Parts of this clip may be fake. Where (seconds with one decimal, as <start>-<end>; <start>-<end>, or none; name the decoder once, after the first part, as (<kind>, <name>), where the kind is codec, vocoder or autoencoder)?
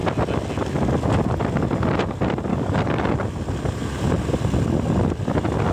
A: 2.5-3.1 (codec, DAC)